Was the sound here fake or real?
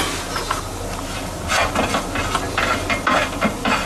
real